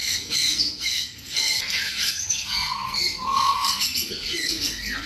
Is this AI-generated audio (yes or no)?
yes